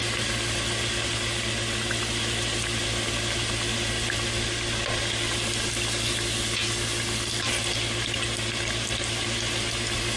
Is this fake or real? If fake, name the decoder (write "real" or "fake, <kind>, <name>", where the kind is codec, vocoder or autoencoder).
real